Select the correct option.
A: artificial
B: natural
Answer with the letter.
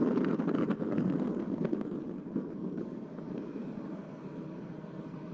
A